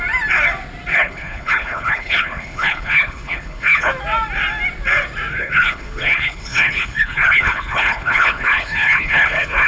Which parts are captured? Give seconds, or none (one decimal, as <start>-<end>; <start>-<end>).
0.0-0.9; 3.9-5.3

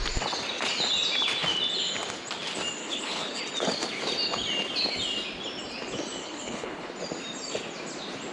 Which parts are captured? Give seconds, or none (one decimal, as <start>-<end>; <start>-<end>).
0.0-2.8; 3.4-6.2; 6.9-8.3

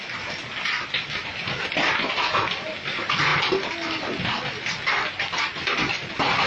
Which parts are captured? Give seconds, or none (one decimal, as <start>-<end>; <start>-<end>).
0.0-6.5

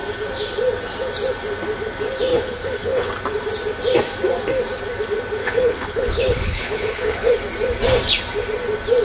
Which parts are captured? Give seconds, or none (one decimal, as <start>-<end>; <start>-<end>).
0.0-2.3; 3.1-5.4; 7.3-9.0

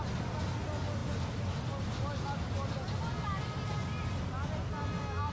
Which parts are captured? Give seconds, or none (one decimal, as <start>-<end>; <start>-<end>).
0.0-5.3

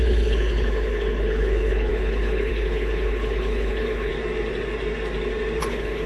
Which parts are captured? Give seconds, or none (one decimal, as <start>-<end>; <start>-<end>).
4.1-5.6